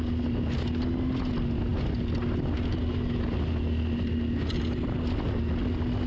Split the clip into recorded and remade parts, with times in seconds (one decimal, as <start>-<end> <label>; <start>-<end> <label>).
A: 0.0-6.1 recorded